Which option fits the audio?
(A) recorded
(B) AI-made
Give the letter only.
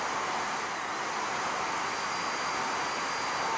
A